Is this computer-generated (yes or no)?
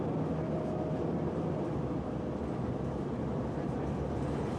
no